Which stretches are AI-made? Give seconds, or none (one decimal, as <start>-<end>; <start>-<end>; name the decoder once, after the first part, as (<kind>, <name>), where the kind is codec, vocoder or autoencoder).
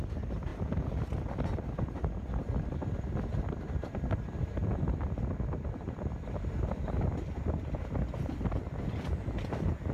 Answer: none